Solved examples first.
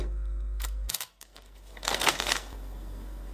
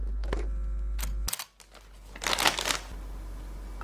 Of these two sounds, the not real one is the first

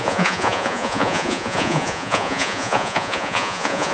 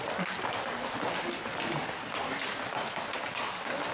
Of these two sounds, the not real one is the first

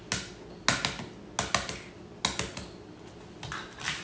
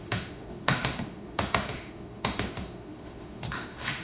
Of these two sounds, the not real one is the second